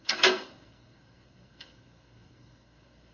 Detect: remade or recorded remade